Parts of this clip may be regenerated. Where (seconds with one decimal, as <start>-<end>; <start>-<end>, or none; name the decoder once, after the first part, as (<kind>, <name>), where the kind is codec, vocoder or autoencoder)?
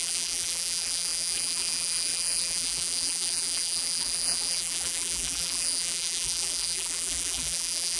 0.0-8.0 (vocoder, BigVGAN v2)